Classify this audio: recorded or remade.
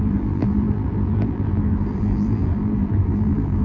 remade